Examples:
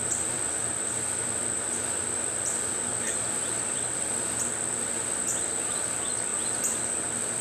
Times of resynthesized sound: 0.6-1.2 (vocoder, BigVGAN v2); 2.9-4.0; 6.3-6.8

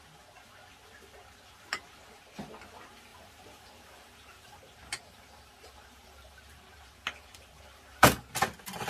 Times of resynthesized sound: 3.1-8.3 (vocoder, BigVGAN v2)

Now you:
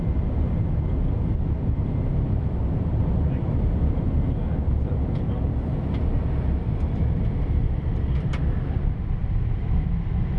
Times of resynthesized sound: 9.2-10.0 (vocoder, BigVGAN v2)

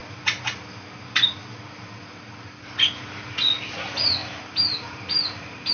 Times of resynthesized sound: 4.2-5.7 (vocoder, BigVGAN v2)